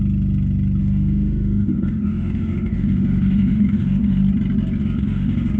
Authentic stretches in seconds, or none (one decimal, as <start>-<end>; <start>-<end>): 0.0-0.8; 4.2-4.8